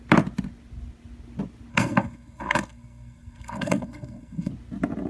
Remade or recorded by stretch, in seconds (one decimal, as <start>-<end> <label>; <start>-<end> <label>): 0.0-1.7 recorded; 1.7-4.5 remade; 4.5-5.1 recorded